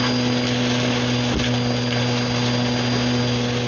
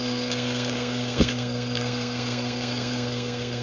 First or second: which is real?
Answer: first